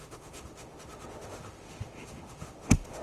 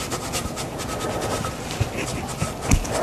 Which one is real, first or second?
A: second